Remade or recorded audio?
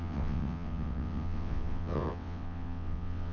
remade